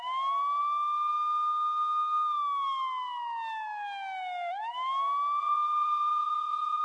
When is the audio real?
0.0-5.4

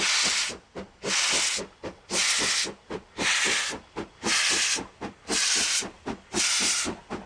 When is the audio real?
0.0-7.3

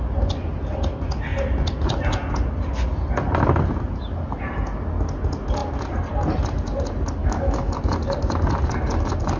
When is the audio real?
0.0-7.2; 7.7-9.4

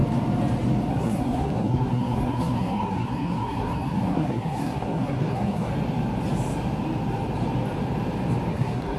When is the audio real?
0.0-0.9; 5.7-8.5

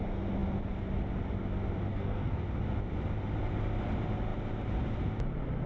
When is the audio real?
0.0-1.9; 2.4-5.7